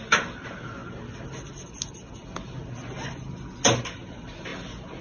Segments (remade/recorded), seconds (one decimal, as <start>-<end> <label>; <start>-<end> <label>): 0.0-5.0 recorded